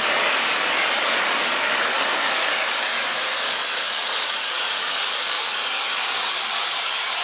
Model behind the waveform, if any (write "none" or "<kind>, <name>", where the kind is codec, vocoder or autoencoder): codec, DAC